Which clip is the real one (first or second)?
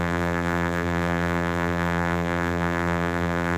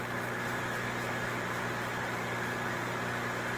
second